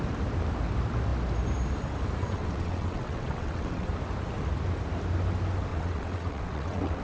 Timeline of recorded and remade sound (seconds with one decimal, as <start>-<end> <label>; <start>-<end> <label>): 0.0-2.2 recorded; 2.2-3.9 remade; 3.9-5.7 recorded; 5.7-7.0 remade